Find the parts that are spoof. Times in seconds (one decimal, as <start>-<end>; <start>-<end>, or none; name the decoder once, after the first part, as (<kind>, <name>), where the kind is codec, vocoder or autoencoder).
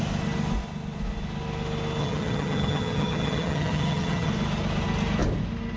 2.0-4.3 (vocoder, HiFi-GAN)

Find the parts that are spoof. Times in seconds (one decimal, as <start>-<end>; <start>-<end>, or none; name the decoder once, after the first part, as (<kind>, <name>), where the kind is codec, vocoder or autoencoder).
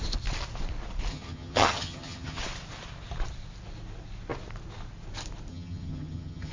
1.1-2.4 (vocoder, HiFi-GAN); 5.5-6.5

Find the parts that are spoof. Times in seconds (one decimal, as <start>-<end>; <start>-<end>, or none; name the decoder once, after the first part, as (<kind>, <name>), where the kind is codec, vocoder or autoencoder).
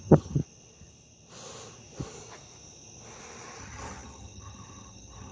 0.0-0.4 (vocoder, HiFi-GAN); 3.6-5.3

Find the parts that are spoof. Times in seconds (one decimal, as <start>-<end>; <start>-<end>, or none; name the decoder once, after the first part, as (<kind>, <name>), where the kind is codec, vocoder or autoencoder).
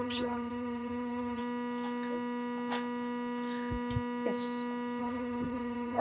0.0-1.4 (vocoder, HiFi-GAN); 5.0-6.0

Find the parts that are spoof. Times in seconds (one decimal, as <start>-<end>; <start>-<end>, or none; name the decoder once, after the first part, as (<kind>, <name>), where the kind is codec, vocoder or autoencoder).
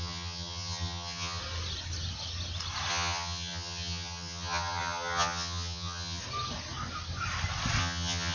0.0-1.4 (vocoder, HiFi-GAN); 2.9-6.2; 7.8-8.3